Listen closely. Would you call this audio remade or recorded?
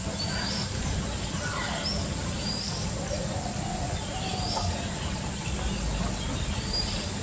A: recorded